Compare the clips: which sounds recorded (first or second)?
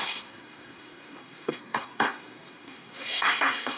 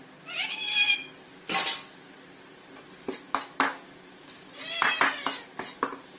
second